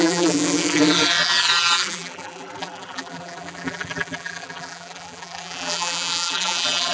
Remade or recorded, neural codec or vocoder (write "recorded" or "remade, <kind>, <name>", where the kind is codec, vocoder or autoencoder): remade, vocoder, BigVGAN v2